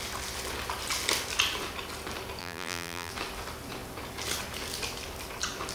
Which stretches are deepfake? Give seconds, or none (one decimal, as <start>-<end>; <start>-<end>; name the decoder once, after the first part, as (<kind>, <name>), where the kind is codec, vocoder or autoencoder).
2.4-3.1 (vocoder, BigVGAN v2)